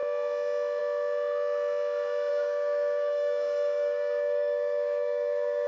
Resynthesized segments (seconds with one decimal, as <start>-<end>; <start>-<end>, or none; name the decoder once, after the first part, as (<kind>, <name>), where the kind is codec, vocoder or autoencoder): 2.3-5.7 (codec, DAC)